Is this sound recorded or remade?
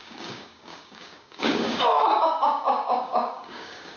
remade